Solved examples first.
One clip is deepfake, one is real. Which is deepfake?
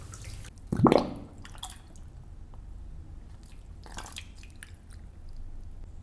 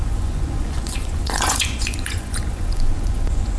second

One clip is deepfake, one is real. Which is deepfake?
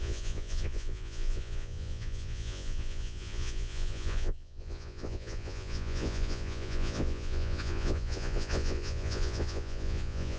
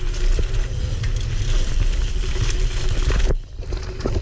first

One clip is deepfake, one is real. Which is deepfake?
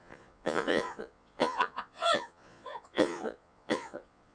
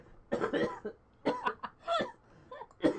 first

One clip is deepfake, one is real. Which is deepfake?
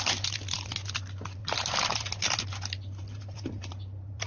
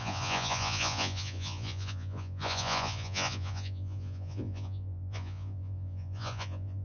second